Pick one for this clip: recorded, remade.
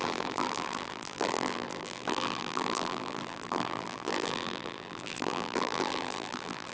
remade